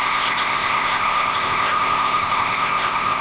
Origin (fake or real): fake